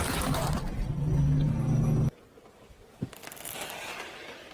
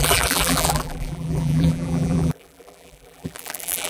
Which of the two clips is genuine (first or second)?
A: first